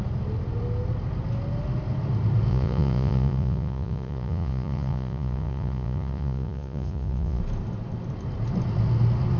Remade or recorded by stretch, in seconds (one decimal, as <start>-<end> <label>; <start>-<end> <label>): 0.0-2.5 recorded; 2.5-7.4 remade; 7.4-9.4 recorded